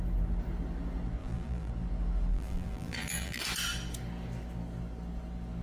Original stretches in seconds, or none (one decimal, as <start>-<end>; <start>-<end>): 0.0-1.2; 1.7-2.3; 3.4-5.6